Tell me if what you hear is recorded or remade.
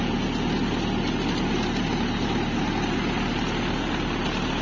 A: recorded